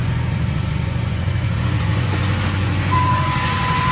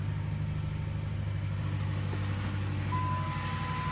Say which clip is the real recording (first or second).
second